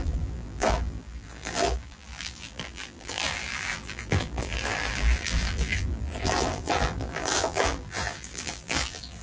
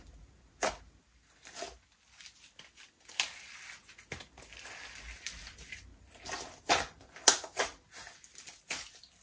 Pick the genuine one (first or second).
second